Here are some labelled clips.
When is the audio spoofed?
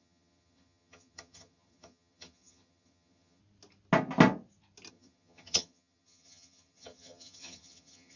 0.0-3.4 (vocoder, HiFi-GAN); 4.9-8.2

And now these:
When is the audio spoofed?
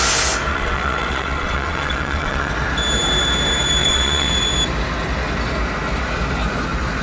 0.5-2.5 (vocoder, WaveNeXt); 3.8-4.3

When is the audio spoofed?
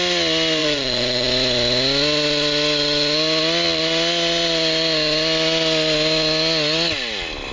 0.6-1.3 (vocoder, Vocos)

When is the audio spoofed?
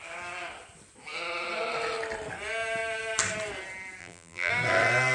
4.0-4.5 (vocoder, BigVGAN v2)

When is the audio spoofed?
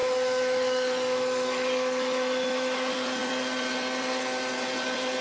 0.0-2.9 (autoencoder, DAC-VAE)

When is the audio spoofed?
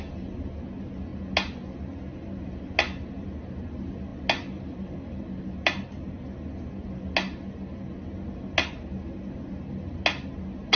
none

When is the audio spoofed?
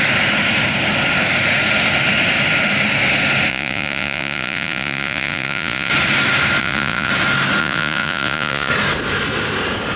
3.5-5.9 (vocoder, Vocos); 6.6-7.1; 7.6-8.7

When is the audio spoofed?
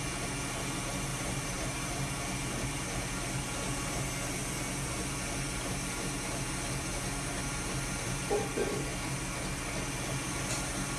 1.1-2.1 (vocoder, BigVGAN v2)